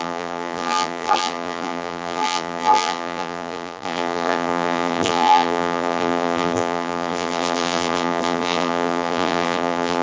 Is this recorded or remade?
remade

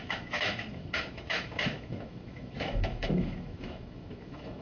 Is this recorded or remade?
remade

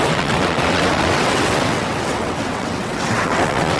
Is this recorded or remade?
remade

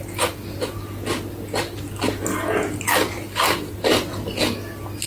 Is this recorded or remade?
recorded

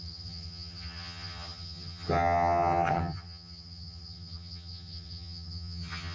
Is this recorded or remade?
remade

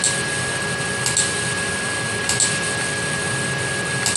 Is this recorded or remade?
recorded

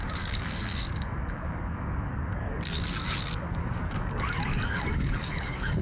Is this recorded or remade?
remade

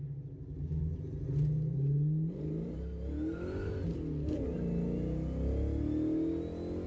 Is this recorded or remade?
recorded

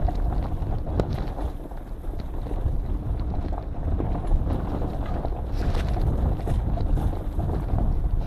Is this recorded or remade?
recorded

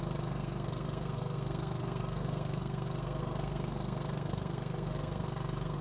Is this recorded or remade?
remade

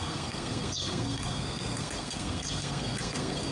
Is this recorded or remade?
remade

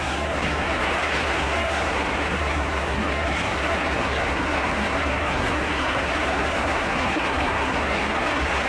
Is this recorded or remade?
remade